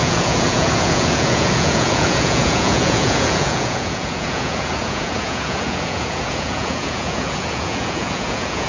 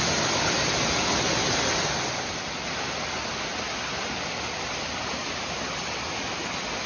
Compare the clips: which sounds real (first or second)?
second